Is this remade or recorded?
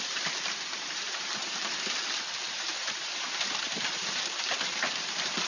recorded